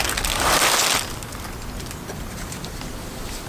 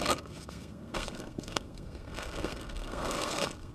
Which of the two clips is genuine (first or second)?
first